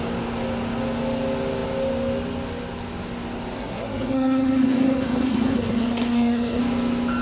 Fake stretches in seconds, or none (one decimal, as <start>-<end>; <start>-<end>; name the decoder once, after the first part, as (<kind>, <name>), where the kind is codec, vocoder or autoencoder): 3.6-6.6 (codec, SNAC)